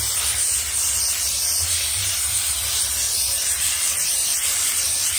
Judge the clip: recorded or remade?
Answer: remade